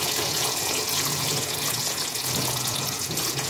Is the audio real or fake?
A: fake